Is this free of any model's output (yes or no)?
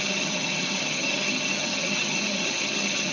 no